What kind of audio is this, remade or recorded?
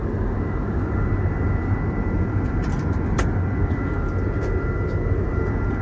recorded